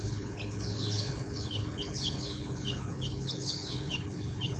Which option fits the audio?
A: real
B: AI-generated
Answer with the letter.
B